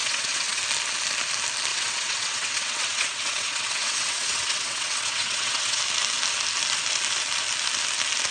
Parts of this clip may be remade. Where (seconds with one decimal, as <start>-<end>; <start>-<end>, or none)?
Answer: 0.0-0.6; 1.7-5.8